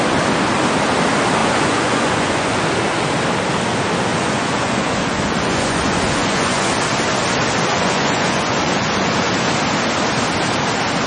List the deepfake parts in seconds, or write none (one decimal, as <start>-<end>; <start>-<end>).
1.4-2.6; 4.1-6.7; 7.7-9.3